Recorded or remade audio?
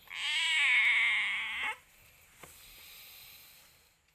recorded